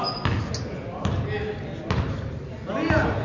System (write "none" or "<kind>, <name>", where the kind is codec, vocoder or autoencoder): none